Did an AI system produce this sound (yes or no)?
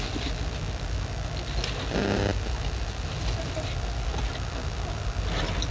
no